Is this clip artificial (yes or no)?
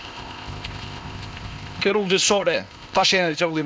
yes